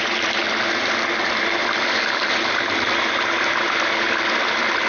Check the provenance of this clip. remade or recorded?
recorded